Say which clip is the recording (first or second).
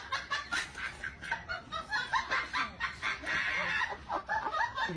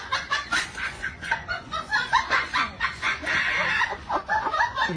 first